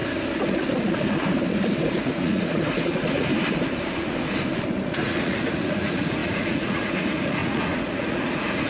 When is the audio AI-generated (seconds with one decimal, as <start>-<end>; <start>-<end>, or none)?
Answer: 2.1-3.3; 4.9-8.7